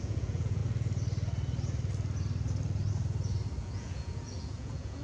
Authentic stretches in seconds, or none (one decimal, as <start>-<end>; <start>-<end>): 0.6-3.6